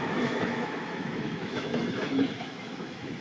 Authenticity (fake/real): fake